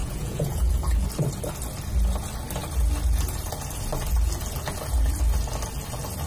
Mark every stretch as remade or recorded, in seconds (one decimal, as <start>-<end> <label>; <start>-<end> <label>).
0.0-0.7 remade; 0.7-6.3 recorded